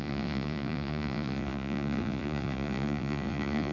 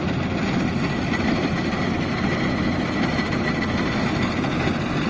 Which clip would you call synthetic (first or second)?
first